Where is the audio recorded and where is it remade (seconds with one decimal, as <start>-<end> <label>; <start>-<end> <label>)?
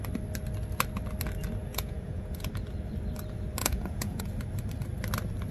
0.0-1.6 recorded; 1.6-2.5 remade; 2.5-3.6 recorded; 3.6-4.2 remade; 4.2-5.5 recorded